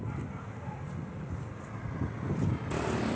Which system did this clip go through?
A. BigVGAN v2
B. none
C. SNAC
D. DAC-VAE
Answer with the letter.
B